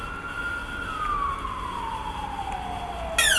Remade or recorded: recorded